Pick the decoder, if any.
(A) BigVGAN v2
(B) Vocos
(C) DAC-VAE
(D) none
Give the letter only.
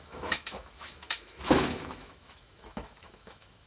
C